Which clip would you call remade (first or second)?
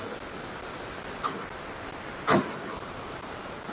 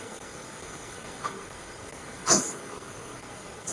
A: second